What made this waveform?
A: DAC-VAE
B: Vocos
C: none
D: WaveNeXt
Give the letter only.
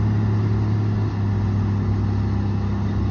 C